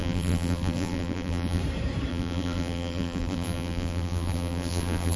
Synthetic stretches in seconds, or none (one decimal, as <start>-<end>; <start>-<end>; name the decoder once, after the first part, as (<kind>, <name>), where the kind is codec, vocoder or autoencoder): 0.0-1.6 (vocoder, BigVGAN v2); 2.1-5.2